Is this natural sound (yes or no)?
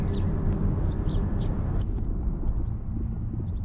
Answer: yes